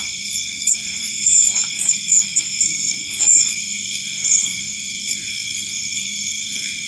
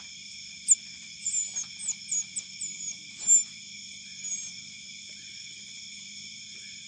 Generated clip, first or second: first